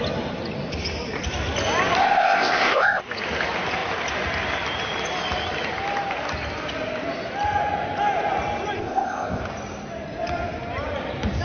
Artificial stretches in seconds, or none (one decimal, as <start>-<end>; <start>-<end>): 2.0-3.0; 8.8-9.4